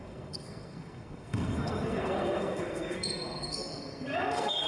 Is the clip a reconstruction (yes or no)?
yes